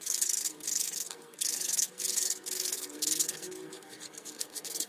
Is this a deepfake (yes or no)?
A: yes